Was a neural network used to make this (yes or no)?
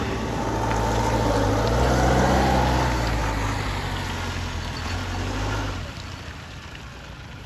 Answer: no